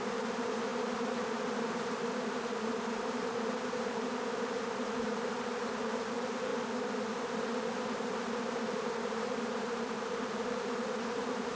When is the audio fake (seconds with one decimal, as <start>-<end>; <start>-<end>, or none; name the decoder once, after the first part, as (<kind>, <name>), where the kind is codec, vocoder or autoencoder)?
0.0-6.5 (vocoder, BigVGAN v2); 7.2-11.5